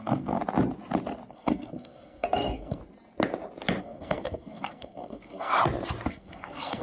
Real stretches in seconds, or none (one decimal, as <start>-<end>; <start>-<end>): 0.4-1.3; 2.8-3.8; 5.5-6.1